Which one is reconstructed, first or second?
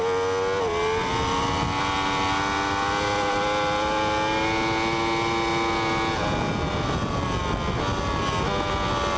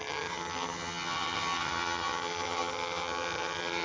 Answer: second